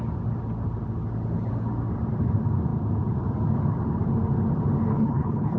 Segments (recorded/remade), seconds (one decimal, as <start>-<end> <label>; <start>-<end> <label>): 0.0-4.9 recorded; 4.9-5.6 remade